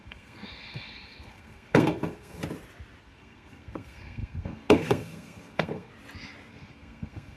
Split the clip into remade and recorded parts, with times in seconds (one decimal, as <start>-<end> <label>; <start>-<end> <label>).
0.0-2.4 remade; 2.4-3.0 recorded; 3.0-5.9 remade; 5.9-6.5 recorded; 6.5-7.4 remade